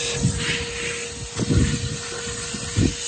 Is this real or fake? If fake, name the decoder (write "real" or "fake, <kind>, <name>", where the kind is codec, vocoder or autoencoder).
real